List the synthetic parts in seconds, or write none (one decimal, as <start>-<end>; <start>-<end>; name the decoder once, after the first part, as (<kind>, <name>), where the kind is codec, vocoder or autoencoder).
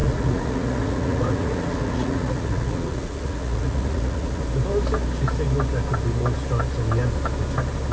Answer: 0.0-4.4 (vocoder, Vocos)